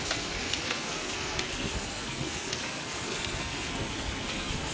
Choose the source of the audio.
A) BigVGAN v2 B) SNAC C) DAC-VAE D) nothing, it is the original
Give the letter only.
B